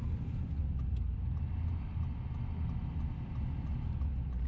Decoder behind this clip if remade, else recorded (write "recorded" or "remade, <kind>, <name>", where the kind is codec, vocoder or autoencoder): recorded